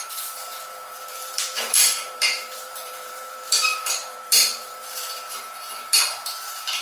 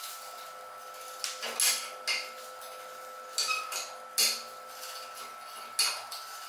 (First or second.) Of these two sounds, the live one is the second